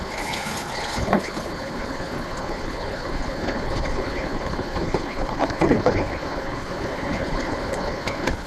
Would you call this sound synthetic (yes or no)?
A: yes